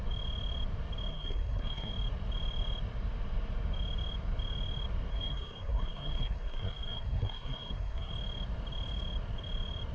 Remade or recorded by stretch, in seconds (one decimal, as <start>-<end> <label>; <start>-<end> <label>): 0.0-1.1 recorded; 1.1-1.9 remade; 1.9-5.1 recorded; 5.1-8.1 remade; 8.1-9.9 recorded